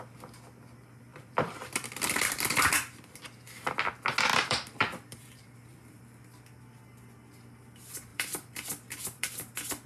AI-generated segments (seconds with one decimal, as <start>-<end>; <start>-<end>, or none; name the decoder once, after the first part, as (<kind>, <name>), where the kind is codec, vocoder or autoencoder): 1.1-3.1 (vocoder, BigVGAN v2); 4.3-6.0; 8.1-9.2